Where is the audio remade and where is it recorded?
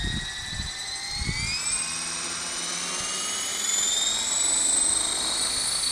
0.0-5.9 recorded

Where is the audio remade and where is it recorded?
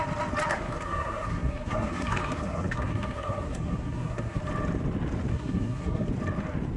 0.0-0.5 recorded; 0.5-4.4 remade; 4.4-5.3 recorded; 5.3-6.1 remade; 6.1-6.8 recorded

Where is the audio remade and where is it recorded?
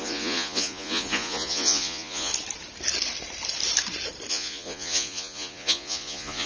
0.0-2.3 remade; 2.3-4.3 recorded; 4.3-6.5 remade